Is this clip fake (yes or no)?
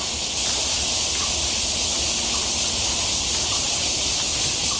no